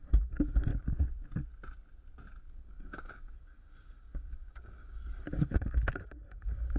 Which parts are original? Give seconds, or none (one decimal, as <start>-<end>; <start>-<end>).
0.7-2.5